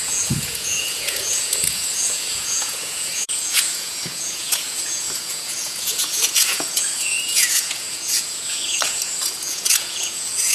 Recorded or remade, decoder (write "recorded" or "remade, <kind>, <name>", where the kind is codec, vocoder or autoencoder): remade, vocoder, Vocos